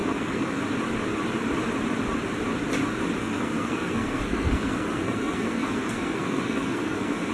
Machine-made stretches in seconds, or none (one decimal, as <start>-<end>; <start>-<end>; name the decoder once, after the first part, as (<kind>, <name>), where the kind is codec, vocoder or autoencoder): 0.0-0.6 (codec, SNAC); 3.2-7.3